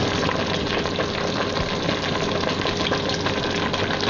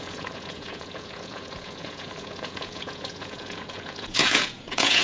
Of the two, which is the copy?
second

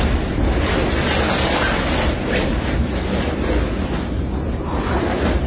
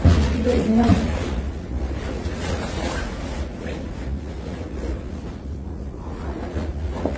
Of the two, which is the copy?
second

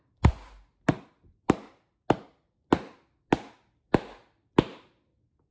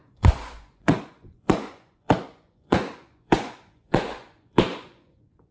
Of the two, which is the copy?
second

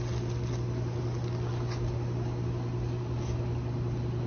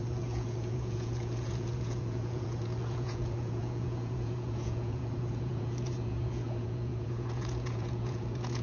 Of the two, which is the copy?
second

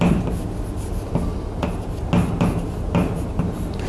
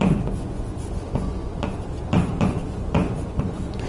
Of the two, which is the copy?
second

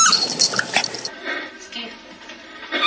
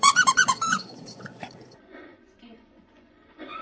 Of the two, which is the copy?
second